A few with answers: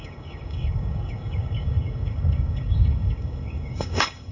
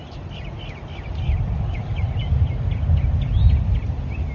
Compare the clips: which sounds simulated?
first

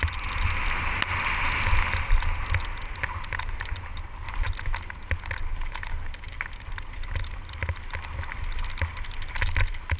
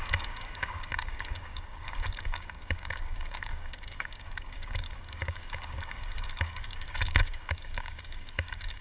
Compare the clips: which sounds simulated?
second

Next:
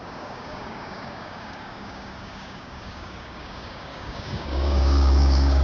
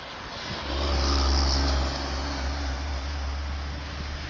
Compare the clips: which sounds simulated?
first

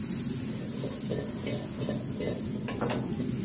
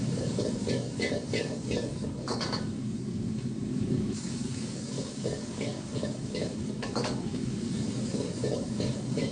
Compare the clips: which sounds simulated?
second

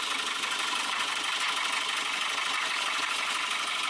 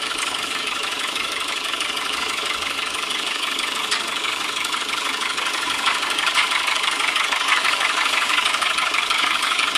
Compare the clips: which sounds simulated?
second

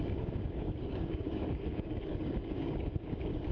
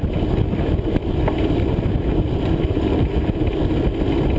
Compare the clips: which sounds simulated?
first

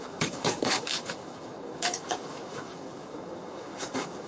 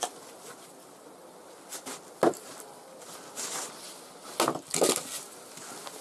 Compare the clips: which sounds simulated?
first